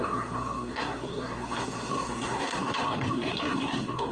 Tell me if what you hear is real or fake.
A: fake